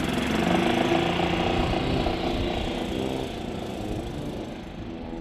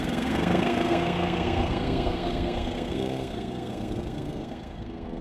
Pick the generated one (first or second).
second